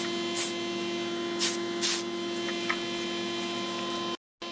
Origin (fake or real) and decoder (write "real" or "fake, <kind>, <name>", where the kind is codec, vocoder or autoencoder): real